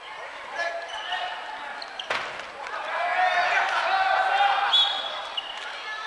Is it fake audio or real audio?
real